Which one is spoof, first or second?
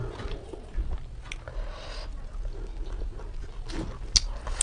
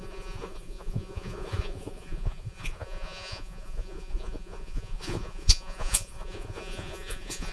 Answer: second